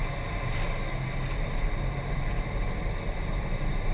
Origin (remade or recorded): recorded